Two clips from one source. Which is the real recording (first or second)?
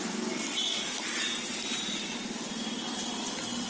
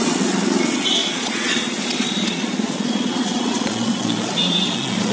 first